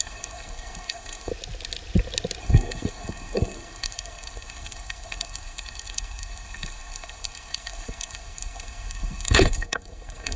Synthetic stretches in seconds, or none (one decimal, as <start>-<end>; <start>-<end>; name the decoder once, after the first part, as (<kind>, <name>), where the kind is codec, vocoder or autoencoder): 0.0-1.3 (codec, SNAC); 2.4-10.4